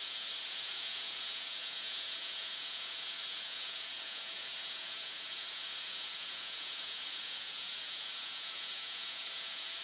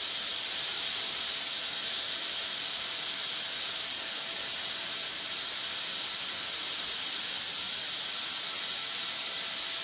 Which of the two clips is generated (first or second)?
first